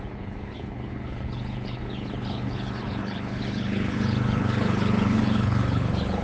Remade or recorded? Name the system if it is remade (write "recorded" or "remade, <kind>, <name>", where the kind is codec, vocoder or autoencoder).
remade, codec, HILCodec